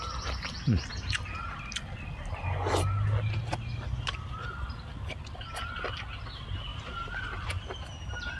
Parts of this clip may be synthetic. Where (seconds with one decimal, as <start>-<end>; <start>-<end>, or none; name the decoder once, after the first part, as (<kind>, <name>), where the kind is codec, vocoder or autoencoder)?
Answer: 6.7-8.4 (vocoder, BigVGAN v2)